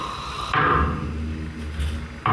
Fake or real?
real